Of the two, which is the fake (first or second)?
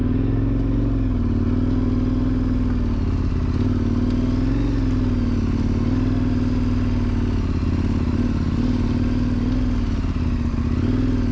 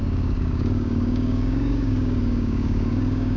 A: second